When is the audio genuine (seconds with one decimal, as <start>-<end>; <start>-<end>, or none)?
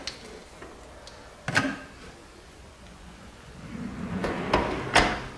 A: 0.0-2.2; 4.4-5.4